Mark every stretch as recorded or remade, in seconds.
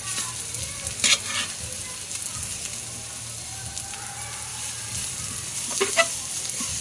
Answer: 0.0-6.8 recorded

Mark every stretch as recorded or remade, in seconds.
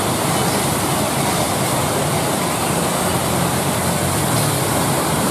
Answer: 0.0-5.3 recorded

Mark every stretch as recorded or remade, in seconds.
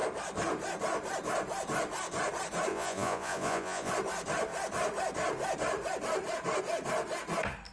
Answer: 0.0-2.7 recorded; 2.7-3.9 remade; 3.9-7.7 recorded